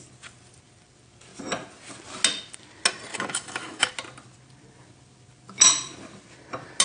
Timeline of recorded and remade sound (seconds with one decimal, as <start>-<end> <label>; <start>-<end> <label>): 0.0-3.1 recorded; 3.1-3.9 remade; 3.9-6.8 recorded